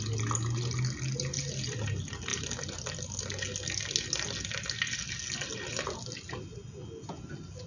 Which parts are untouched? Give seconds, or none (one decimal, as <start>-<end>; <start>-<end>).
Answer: 0.0-7.7